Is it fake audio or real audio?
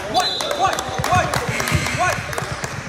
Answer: fake